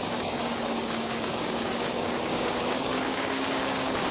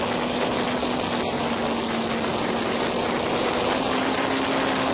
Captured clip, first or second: second